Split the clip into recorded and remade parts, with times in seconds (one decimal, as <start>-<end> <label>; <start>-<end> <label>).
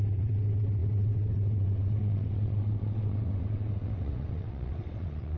0.0-5.4 remade